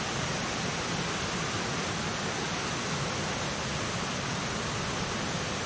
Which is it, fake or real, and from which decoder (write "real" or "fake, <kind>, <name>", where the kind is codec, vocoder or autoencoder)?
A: real